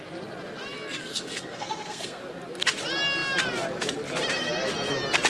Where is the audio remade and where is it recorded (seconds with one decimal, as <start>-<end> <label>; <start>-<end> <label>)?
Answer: 0.0-1.0 recorded; 1.0-2.2 remade; 2.2-5.3 recorded